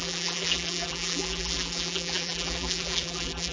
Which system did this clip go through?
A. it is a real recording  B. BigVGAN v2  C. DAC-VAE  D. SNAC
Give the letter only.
B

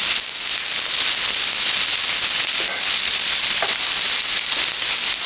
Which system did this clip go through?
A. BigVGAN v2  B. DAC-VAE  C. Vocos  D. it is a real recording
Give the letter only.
D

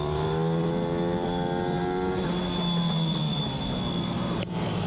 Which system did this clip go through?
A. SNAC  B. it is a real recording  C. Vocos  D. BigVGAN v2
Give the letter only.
B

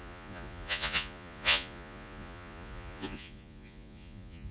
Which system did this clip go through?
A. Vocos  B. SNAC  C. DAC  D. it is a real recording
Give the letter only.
A